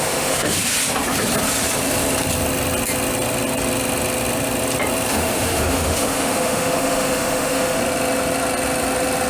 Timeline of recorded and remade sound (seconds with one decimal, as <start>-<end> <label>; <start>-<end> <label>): 0.0-0.7 remade; 0.7-5.1 recorded; 5.1-7.8 remade; 7.8-9.3 recorded